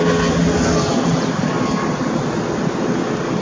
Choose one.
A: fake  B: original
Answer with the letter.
B